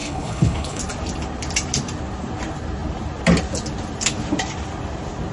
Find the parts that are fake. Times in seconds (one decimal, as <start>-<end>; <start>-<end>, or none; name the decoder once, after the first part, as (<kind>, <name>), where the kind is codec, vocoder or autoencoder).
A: 0.0-0.8 (codec, HILCodec)